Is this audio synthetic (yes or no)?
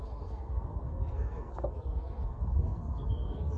yes